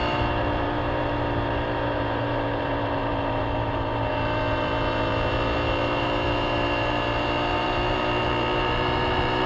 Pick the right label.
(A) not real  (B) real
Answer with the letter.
A